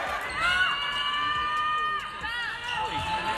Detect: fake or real real